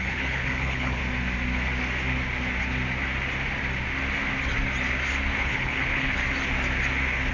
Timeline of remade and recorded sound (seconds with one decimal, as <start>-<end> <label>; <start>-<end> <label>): 0.0-1.0 remade; 1.0-5.4 recorded; 5.4-6.2 remade; 6.2-7.3 recorded